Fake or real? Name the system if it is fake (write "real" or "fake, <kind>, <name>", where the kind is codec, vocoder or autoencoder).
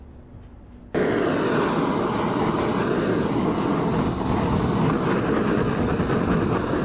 real